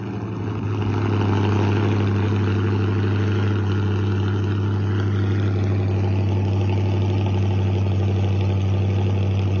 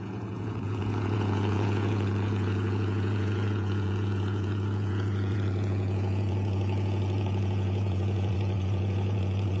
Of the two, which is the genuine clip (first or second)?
first